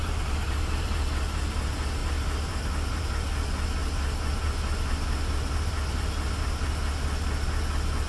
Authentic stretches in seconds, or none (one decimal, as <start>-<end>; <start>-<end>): 1.1-2.0; 3.0-3.8; 4.3-8.1